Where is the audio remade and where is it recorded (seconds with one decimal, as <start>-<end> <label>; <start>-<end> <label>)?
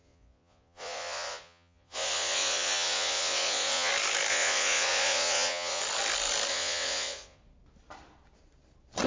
0.0-3.9 remade; 3.9-4.3 recorded; 4.3-5.8 remade; 5.8-6.5 recorded; 6.5-7.4 remade; 7.4-9.1 recorded